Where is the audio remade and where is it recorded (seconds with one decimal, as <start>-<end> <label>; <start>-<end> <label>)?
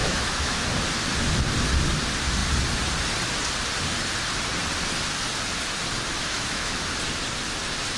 0.0-0.6 remade; 0.6-6.2 recorded; 6.2-6.8 remade; 6.8-8.0 recorded